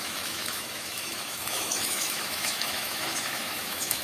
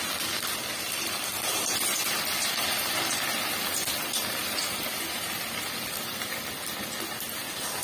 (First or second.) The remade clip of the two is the first